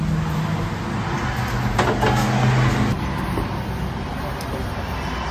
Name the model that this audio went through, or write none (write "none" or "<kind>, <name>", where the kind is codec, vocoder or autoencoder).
none